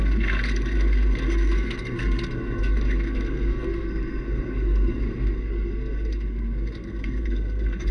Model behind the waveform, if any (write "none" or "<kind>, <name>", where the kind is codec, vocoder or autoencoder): codec, SNAC